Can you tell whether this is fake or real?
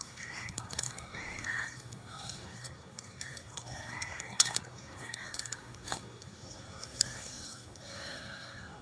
fake